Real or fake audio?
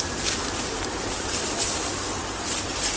real